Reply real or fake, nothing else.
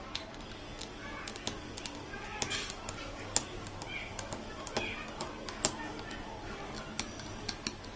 real